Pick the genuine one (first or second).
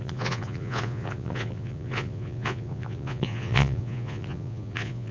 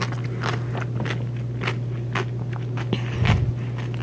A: second